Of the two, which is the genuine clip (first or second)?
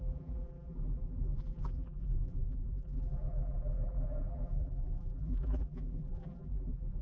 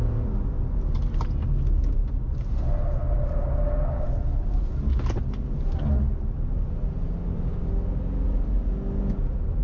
second